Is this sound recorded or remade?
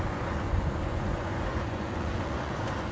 remade